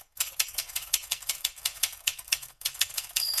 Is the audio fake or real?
fake